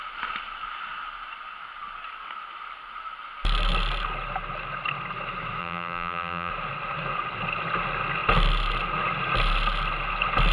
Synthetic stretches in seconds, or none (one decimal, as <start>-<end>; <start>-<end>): 5.6-6.5